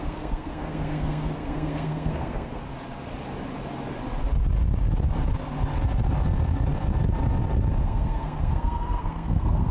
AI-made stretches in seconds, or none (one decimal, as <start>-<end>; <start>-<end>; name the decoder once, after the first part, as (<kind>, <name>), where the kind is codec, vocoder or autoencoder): 0.0-2.6 (codec, SNAC); 7.8-9.7